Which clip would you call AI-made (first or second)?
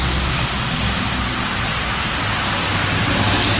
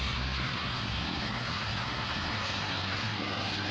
second